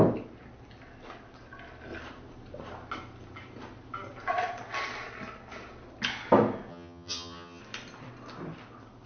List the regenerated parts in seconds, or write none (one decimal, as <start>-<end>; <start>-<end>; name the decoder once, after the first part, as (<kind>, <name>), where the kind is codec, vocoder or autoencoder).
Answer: 6.7-7.6 (vocoder, HiFi-GAN)